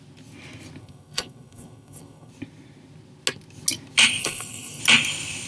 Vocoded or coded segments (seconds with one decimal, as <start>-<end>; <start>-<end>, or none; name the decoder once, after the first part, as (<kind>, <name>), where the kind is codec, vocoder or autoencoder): 0.8-2.3 (codec, SNAC); 4.2-4.8